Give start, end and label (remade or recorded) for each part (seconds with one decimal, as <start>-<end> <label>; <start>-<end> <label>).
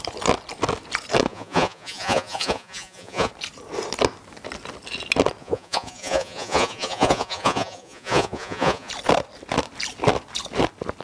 0.0-1.3 recorded; 1.3-3.3 remade; 3.3-5.4 recorded; 5.4-8.9 remade; 8.9-11.0 recorded